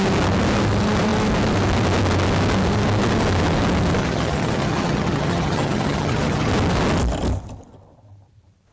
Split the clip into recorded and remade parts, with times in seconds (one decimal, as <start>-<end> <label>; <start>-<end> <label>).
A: 0.0-4.0 recorded; 4.0-6.5 remade; 6.5-8.7 recorded